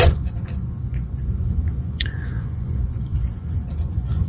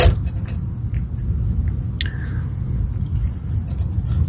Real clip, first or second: second